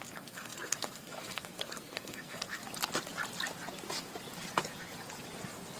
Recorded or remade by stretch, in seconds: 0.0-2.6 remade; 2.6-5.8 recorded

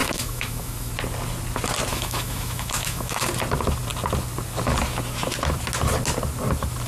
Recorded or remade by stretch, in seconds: 0.0-0.9 remade; 0.9-1.9 recorded; 1.9-3.3 remade; 3.3-6.9 recorded

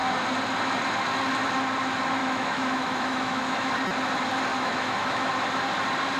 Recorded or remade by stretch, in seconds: 0.0-2.2 recorded; 2.2-3.7 remade; 3.7-4.5 recorded; 4.5-5.3 remade; 5.3-6.2 recorded